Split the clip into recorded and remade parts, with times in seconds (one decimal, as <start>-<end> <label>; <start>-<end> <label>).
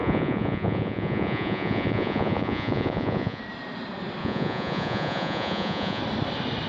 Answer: 0.0-3.4 remade; 3.4-4.2 recorded; 4.2-6.0 remade; 6.0-6.7 recorded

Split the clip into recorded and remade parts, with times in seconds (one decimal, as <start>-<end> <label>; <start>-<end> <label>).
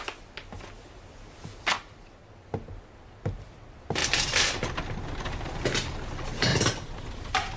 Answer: 0.0-0.8 recorded; 0.8-2.2 remade; 2.2-6.5 recorded; 6.5-7.6 remade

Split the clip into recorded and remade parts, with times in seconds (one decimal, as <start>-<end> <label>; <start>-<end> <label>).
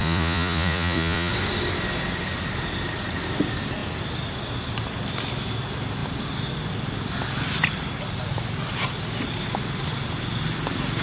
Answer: 0.0-1.3 remade; 1.3-11.0 recorded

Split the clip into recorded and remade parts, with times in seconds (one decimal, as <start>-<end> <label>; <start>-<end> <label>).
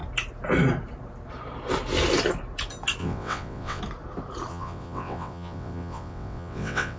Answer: 0.0-3.0 recorded; 3.0-3.8 remade; 3.8-4.5 recorded; 4.5-7.0 remade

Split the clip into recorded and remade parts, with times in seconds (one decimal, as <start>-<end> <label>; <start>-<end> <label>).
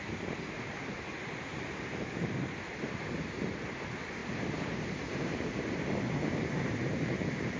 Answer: 0.0-1.5 recorded; 1.5-2.2 remade; 2.2-4.2 recorded; 4.2-7.6 remade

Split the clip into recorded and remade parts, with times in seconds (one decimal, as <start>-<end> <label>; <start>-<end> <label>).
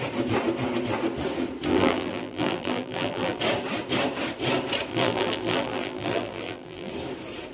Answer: 0.0-1.7 recorded; 1.7-3.4 remade; 3.4-4.9 recorded; 4.9-6.9 remade; 6.9-7.5 recorded